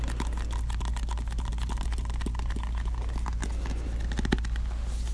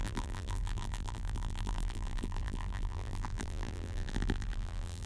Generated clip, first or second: second